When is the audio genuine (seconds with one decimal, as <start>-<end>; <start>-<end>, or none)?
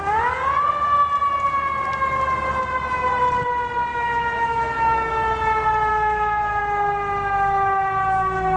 0.0-3.9; 5.1-5.9; 6.6-8.6